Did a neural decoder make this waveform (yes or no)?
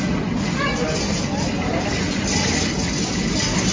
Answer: no